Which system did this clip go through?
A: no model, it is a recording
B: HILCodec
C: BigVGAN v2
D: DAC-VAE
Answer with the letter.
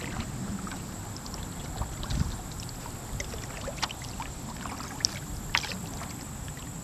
A